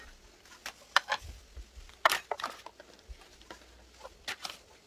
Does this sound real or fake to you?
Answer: real